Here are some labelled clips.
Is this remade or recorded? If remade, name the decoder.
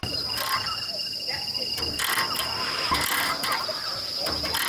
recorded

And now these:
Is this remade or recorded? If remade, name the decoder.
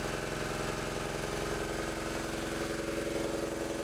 recorded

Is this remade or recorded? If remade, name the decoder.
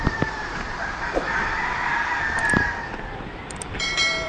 remade, vocoder, BigVGAN v2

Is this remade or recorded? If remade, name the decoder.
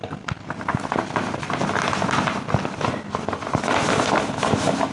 recorded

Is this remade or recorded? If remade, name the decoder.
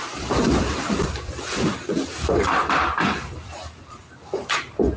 remade, vocoder, BigVGAN v2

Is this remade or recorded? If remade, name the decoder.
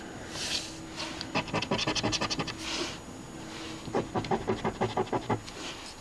recorded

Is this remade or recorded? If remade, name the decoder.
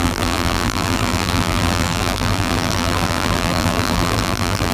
remade, vocoder, BigVGAN v2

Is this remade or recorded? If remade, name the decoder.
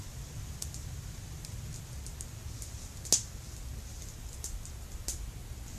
recorded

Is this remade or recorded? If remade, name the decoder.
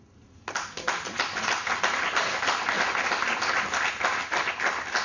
recorded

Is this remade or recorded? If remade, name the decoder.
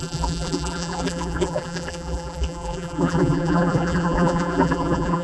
remade, vocoder, BigVGAN v2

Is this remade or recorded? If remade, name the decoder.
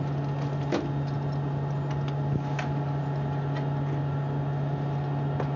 recorded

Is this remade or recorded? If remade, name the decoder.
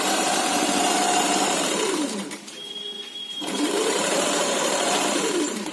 remade, vocoder, BigVGAN v2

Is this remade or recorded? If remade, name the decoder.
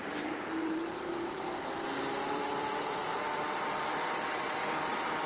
remade, vocoder, BigVGAN v2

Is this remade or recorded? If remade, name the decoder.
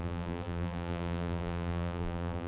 remade, vocoder, BigVGAN v2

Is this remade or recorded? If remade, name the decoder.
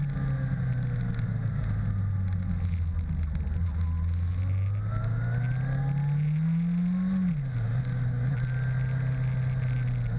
recorded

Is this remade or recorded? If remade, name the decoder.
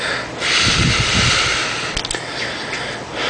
recorded